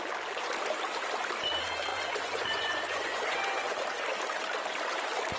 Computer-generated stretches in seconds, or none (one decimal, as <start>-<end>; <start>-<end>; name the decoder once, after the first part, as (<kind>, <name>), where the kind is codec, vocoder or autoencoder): 1.9-3.8 (vocoder, Vocos)